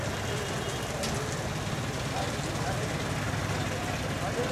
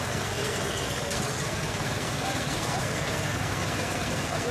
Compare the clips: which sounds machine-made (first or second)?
second